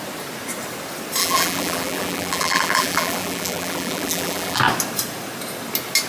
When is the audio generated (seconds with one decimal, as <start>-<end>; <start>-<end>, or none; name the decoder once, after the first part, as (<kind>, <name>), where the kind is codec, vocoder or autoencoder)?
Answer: 1.2-4.6 (vocoder, BigVGAN v2)